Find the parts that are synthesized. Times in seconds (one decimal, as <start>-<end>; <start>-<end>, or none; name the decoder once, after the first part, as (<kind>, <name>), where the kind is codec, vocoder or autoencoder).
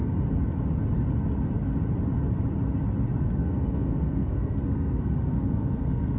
3.2-6.2 (codec, SNAC)